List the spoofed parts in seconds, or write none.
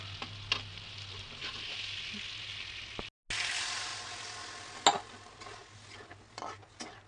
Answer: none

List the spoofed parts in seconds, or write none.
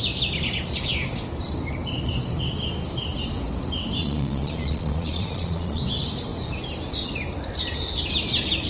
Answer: 4.0-5.8 (vocoder, Vocos)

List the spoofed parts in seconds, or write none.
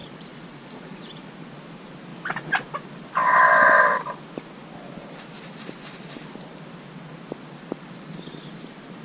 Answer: 0.0-1.3 (vocoder, Vocos)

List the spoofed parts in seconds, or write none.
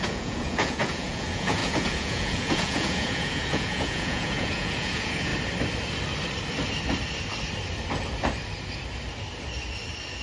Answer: 0.0-5.3 (vocoder, Vocos)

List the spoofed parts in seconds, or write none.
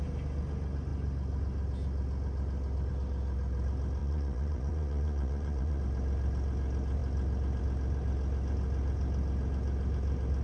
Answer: 4.0-5.8 (vocoder, Vocos)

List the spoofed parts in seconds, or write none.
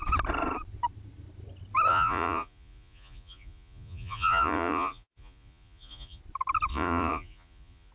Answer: 1.9-6.2 (vocoder, Vocos); 6.7-7.9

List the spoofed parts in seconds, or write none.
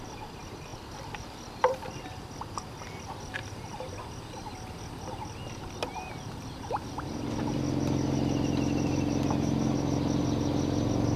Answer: none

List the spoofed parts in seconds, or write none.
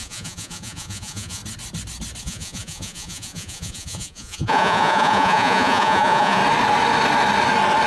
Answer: 0.0-1.4 (vocoder, Vocos); 2.2-6.4